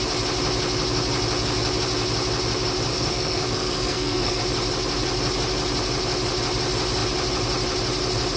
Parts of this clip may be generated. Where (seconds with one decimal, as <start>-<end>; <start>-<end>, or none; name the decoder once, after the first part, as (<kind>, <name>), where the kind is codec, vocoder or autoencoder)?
2.9-4.4 (codec, SNAC)